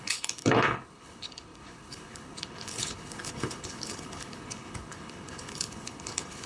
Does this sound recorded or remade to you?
remade